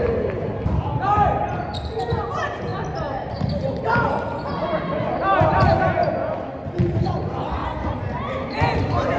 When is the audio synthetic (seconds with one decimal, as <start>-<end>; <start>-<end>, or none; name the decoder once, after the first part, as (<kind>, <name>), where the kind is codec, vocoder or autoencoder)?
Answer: 7.6-9.2 (vocoder, BigVGAN v2)